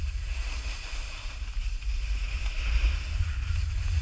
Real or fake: real